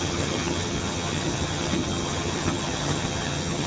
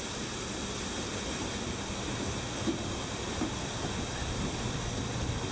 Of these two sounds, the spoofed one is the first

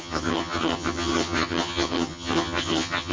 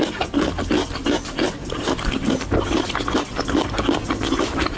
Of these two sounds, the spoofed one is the first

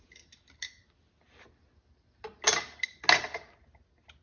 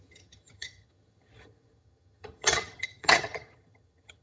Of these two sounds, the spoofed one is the second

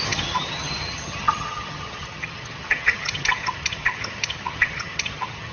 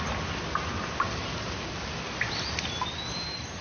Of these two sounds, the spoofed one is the first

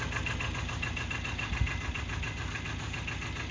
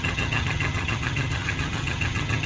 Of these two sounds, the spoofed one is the second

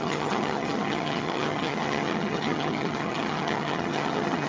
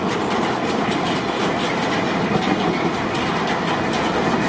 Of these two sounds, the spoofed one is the first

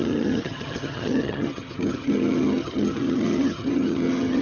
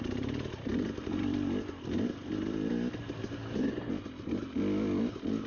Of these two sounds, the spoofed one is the first